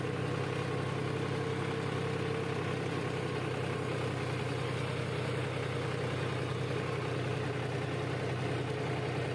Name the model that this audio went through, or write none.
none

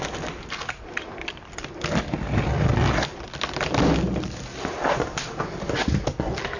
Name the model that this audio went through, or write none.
none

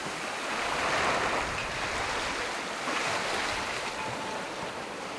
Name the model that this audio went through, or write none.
none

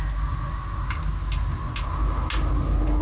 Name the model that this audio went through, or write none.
none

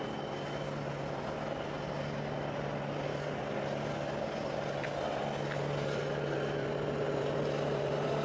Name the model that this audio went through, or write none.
none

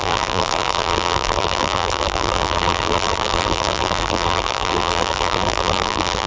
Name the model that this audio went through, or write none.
vocoder, BigVGAN v2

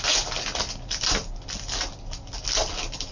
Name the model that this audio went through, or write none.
none